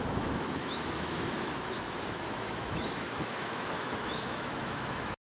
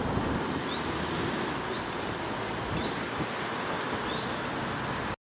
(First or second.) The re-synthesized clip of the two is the first